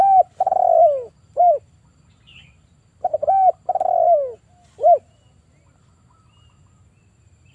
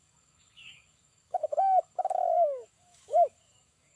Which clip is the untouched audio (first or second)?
first